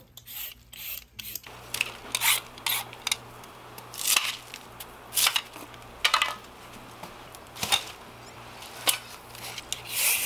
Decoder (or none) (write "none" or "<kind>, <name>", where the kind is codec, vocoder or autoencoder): none